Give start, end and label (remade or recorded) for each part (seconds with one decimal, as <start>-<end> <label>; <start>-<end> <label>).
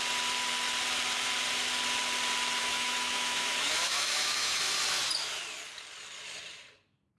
0.0-2.6 recorded; 2.6-4.6 remade; 4.6-7.2 recorded